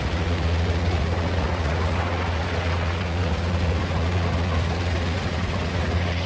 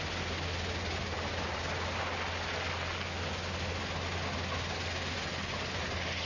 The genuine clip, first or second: second